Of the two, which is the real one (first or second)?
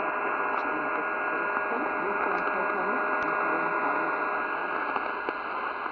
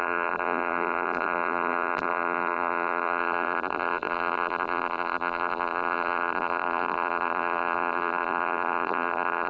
first